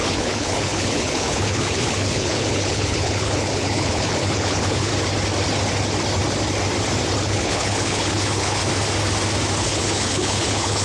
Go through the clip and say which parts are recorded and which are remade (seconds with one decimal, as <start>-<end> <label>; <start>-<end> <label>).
0.0-4.9 remade; 4.9-7.2 recorded; 7.2-8.6 remade; 8.6-9.6 recorded; 9.6-10.8 remade